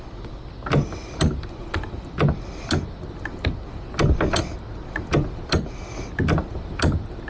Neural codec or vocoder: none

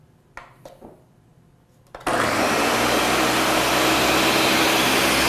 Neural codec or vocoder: none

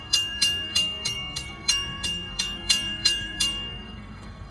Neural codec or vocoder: codec, SNAC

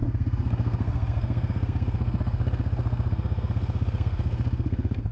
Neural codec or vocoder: codec, SNAC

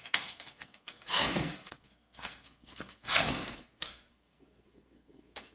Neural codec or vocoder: codec, SNAC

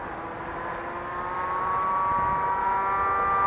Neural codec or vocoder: none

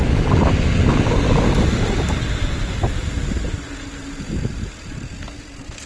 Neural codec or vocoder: none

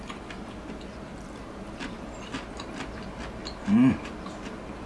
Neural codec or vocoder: none